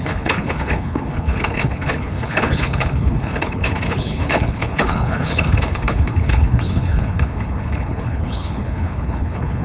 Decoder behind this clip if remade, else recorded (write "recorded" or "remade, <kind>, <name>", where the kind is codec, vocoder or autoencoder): remade, codec, HILCodec